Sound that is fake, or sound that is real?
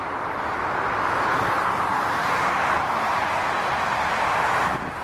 real